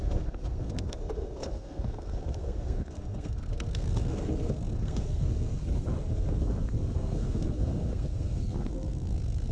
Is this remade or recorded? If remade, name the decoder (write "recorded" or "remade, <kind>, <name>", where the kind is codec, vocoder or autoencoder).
remade, codec, SNAC